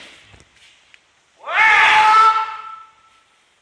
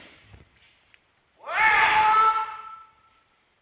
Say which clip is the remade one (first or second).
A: second